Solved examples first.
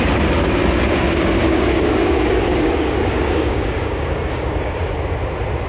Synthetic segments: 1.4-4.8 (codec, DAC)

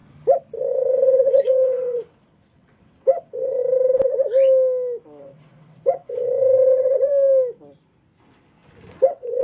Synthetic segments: 0.6-3.6 (vocoder, WaveNeXt); 5.2-7.1; 8.9-9.4

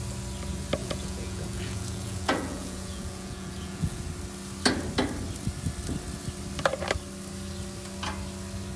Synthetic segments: 0.8-4.0 (vocoder, Vocos)